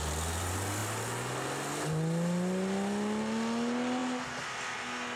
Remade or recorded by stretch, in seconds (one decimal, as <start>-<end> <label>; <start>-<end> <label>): 0.0-5.2 recorded